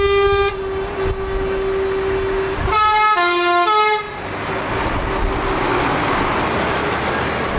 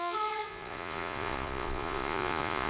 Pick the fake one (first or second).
second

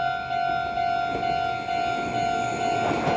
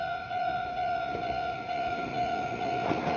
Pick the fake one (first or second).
second